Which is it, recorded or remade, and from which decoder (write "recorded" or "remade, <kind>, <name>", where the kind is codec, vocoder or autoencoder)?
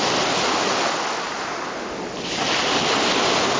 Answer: recorded